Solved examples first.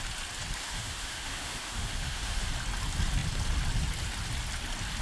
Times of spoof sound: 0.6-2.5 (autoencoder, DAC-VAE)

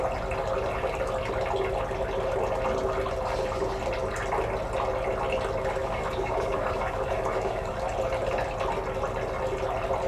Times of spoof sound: 5.8-7.7 (codec, DAC)

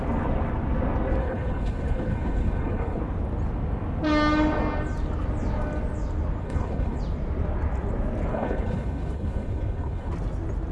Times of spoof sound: 1.2-3.0 (codec, HILCodec); 6.4-7.0; 8.3-10.1

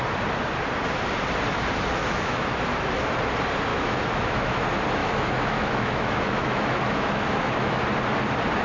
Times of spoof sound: 2.0-2.6 (autoencoder, DAC-VAE); 3.7-4.6; 5.0-7.8

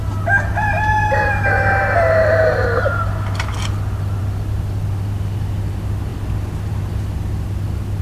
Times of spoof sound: none

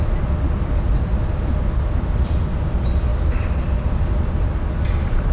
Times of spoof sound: none